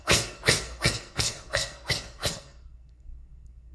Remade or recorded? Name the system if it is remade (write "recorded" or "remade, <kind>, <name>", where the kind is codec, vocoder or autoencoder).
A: remade, codec, SNAC